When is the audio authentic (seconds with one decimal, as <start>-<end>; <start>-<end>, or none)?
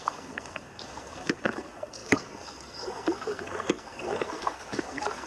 none